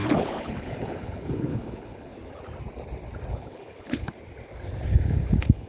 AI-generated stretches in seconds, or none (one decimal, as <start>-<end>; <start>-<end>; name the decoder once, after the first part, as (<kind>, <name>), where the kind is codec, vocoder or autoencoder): 0.0-2.1 (codec, HILCodec); 3.3-4.1; 4.9-5.7